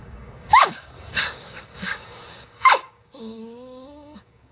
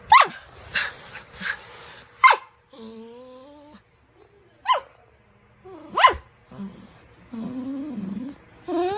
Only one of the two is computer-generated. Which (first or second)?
first